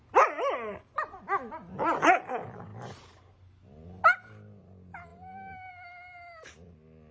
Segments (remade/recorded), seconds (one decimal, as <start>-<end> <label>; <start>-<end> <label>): 0.0-7.1 recorded